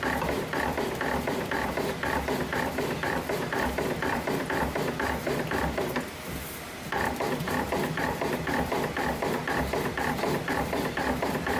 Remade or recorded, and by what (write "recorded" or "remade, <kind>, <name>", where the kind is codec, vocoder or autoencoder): remade, vocoder, BigVGAN v2